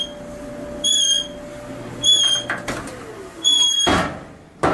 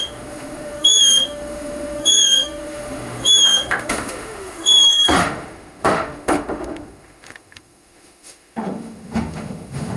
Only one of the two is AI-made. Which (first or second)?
second